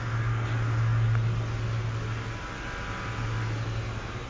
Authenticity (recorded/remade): recorded